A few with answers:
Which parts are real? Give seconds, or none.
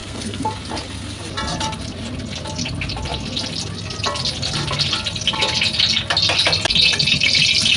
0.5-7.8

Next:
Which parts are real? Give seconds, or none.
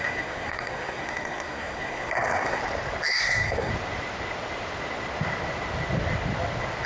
2.6-3.2; 3.7-6.9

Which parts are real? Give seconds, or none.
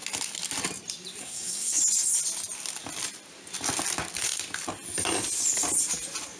0.0-1.2; 1.8-6.4